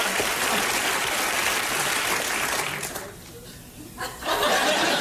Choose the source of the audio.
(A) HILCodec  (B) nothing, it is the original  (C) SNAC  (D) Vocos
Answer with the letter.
B